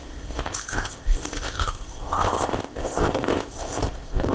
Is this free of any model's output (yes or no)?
no